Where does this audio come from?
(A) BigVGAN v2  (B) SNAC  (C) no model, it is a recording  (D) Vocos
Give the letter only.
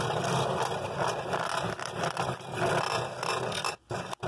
C